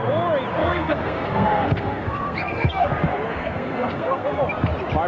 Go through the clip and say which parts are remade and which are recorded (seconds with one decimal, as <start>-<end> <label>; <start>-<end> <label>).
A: 0.0-0.6 recorded; 0.6-2.9 remade; 2.9-3.3 recorded; 3.3-4.4 remade; 4.4-5.1 recorded